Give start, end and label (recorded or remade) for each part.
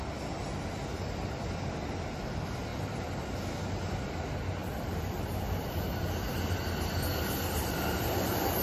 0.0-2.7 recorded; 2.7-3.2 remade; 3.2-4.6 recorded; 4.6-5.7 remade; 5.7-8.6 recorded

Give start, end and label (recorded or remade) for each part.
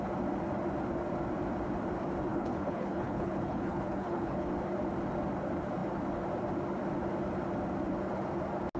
0.0-2.3 recorded; 2.3-4.5 remade; 4.5-8.8 recorded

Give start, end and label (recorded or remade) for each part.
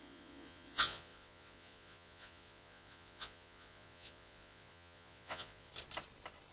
0.0-5.7 remade; 5.7-6.5 recorded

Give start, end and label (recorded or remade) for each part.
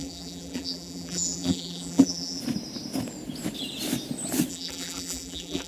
0.0-2.4 remade; 2.4-4.5 recorded; 4.5-5.7 remade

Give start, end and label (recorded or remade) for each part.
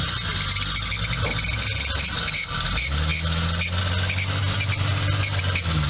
0.0-5.9 recorded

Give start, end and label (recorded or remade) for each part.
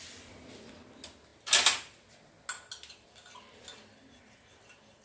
0.0-5.0 recorded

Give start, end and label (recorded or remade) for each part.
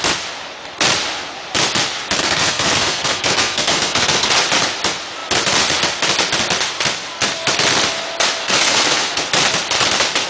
0.0-2.2 recorded; 2.2-4.3 remade; 4.3-8.4 recorded; 8.4-9.2 remade; 9.2-10.3 recorded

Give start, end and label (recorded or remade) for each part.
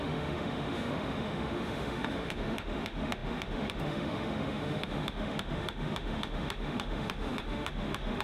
0.0-8.2 remade